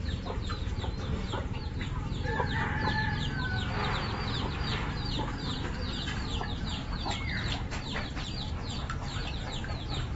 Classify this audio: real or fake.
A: fake